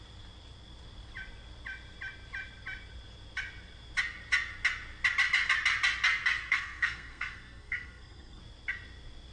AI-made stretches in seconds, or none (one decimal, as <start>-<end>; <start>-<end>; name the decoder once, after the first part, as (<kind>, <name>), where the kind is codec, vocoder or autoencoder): 6.5-8.4 (codec, SNAC)